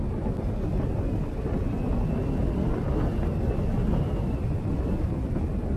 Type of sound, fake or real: real